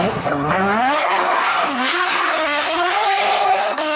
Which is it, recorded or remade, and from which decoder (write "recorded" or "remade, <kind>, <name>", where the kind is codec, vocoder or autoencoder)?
remade, codec, SNAC